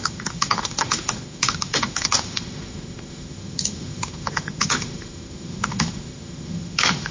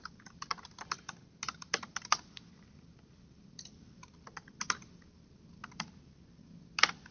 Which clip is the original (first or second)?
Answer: second